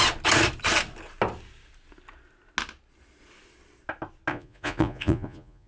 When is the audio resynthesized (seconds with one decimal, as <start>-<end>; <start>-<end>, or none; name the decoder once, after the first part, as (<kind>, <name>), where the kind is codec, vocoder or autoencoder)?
4.3-5.7 (vocoder, Vocos)